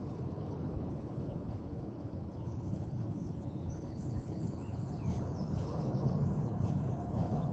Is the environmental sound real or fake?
fake